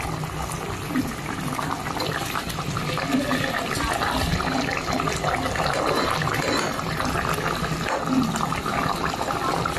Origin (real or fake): real